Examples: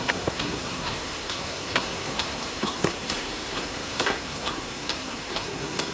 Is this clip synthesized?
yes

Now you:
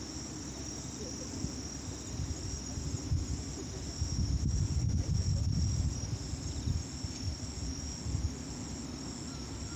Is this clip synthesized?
no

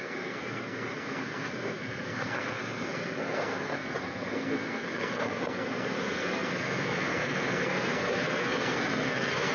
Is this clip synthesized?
yes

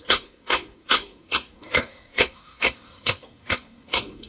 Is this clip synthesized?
yes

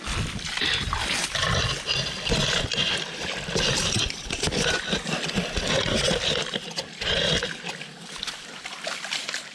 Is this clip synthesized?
no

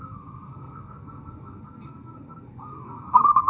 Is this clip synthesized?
yes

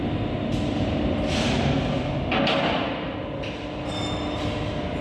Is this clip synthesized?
no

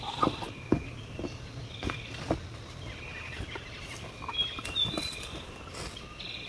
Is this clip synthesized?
no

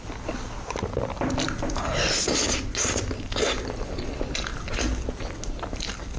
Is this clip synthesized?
no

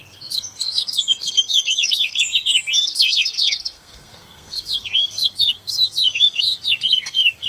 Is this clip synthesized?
yes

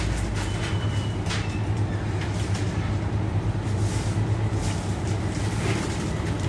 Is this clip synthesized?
no